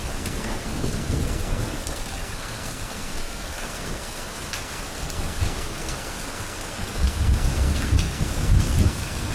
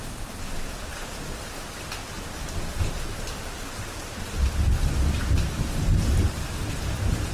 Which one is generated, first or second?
first